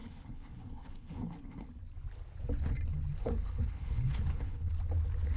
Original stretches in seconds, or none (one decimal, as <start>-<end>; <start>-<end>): 1.8-3.2; 4.7-5.4